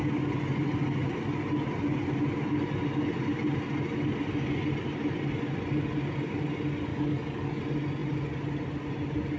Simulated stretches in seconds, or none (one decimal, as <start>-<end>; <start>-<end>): 6.9-7.6